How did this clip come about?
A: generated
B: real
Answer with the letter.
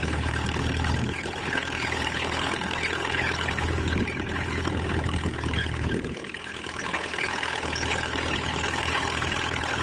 A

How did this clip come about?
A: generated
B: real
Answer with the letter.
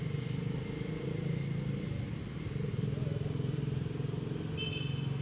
B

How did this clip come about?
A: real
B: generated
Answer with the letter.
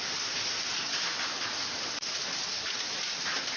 A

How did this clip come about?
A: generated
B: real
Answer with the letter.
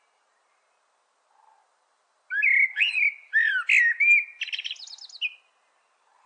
B